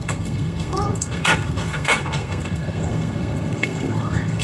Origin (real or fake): fake